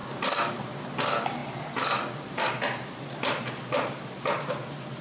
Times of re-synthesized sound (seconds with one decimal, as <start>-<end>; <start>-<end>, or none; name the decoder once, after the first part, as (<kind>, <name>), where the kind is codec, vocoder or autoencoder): 0.5-5.0 (vocoder, BigVGAN v2)